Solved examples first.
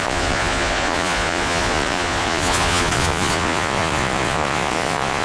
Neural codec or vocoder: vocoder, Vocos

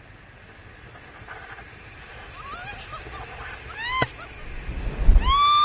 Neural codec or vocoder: none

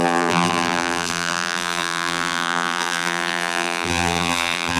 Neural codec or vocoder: vocoder, BigVGAN v2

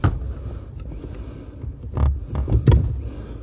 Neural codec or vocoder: none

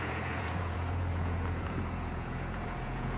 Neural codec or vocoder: vocoder, Vocos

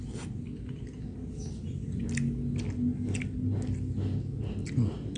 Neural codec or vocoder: none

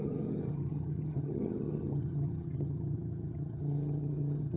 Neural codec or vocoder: vocoder, HiFi-GAN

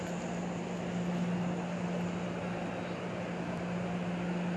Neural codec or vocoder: none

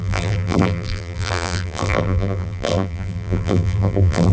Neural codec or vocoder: vocoder, BigVGAN v2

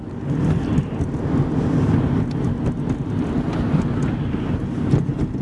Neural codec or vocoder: none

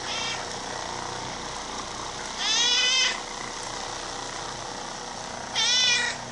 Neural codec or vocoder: none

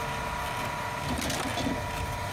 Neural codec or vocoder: none